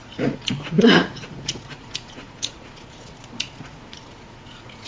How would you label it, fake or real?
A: fake